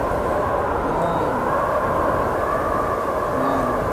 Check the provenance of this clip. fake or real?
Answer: real